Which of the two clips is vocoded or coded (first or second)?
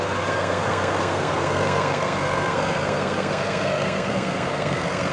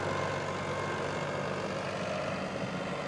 first